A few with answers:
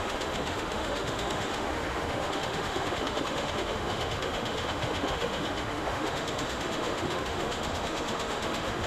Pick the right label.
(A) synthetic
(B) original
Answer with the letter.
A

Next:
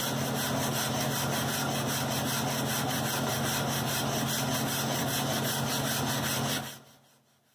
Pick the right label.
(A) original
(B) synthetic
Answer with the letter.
A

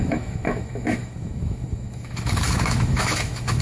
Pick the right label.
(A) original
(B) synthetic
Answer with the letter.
B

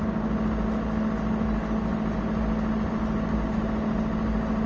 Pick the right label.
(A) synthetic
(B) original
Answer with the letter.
B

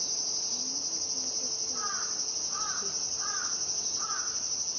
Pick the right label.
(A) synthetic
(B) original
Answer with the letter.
B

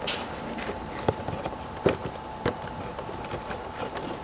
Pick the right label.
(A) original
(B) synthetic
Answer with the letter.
A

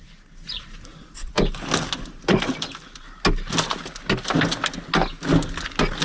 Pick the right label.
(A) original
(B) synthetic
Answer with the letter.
A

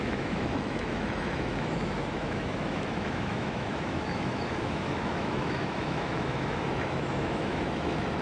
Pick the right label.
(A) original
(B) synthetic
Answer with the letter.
B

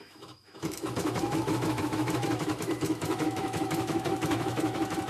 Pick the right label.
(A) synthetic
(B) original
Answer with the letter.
A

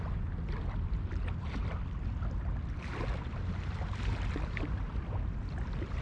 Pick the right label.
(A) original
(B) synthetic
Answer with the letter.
A